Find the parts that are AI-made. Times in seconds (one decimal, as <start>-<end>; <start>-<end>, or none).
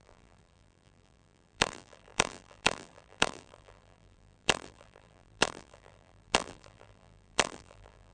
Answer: 0.0-8.1